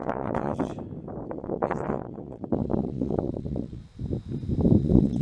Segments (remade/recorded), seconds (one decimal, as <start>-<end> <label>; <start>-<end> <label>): 0.0-0.7 remade; 0.7-1.3 recorded; 1.3-3.8 remade; 3.8-4.8 recorded; 4.8-5.2 remade